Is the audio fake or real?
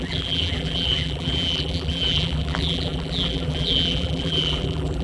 fake